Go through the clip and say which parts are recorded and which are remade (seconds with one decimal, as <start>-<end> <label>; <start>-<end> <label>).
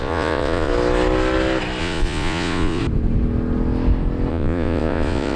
0.0-0.7 remade; 0.7-1.8 recorded; 1.8-2.8 remade; 2.8-4.3 recorded; 4.3-5.4 remade